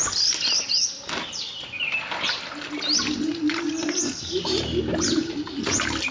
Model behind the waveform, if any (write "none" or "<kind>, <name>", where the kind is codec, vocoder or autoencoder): none